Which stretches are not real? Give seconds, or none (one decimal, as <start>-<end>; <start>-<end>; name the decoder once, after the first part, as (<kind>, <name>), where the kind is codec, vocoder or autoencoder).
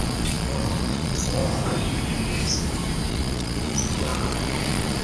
0.0-1.4 (vocoder, Vocos); 3.1-5.0